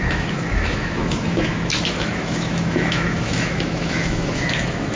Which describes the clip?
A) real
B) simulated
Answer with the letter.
B